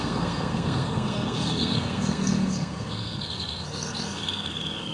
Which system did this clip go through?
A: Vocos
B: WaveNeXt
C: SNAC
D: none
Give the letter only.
C